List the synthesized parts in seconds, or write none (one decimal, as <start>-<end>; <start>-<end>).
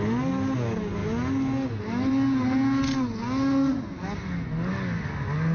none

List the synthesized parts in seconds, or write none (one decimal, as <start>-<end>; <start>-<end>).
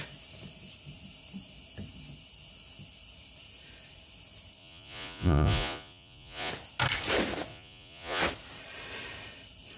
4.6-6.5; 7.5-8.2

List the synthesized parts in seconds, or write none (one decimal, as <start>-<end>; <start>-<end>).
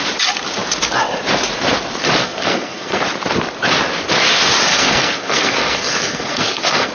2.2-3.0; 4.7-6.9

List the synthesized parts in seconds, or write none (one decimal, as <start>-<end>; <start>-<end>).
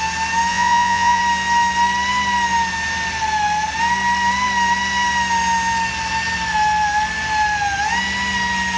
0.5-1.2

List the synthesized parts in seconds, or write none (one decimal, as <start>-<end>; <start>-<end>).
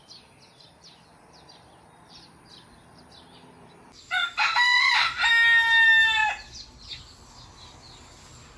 6.2-7.3